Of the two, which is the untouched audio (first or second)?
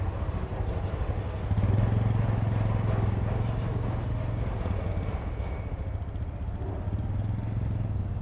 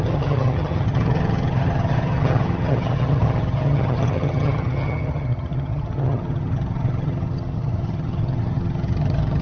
first